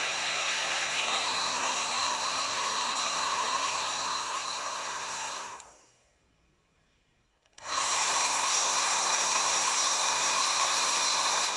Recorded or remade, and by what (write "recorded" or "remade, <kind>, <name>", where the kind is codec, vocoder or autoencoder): remade, codec, SNAC